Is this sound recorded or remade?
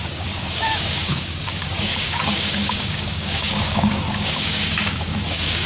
remade